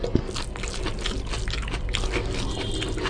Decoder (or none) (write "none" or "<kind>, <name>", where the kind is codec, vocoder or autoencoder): none